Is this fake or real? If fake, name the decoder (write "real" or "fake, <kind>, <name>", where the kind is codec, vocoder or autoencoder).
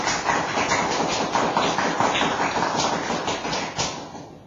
real